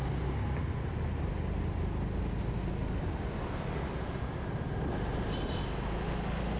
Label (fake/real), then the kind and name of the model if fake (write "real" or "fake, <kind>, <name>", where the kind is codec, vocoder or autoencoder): real